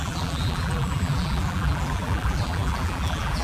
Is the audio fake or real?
fake